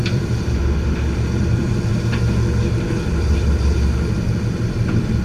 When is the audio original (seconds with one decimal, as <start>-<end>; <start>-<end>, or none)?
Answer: 1.9-2.6